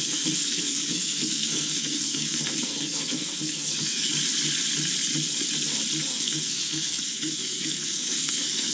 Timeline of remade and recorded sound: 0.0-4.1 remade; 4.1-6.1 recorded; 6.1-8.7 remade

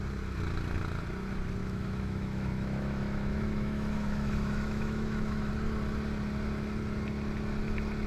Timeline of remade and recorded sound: 0.0-1.6 recorded; 1.6-5.5 remade; 5.5-8.1 recorded

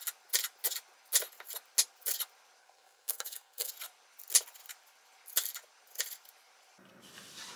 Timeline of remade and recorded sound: 0.0-2.6 recorded; 2.6-3.7 remade; 3.7-7.6 recorded